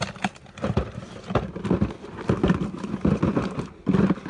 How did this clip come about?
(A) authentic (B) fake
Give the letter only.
A